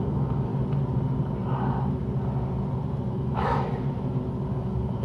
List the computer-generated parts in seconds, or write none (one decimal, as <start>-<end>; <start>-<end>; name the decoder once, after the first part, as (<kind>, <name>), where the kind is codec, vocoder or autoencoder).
0.0-0.5 (autoencoder, DAC-VAE); 3.1-3.7; 4.5-5.0